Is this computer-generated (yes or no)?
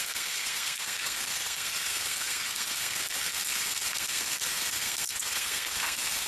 yes